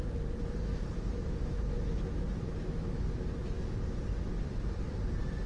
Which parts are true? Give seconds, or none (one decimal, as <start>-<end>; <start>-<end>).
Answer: 0.0-0.7; 4.0-5.5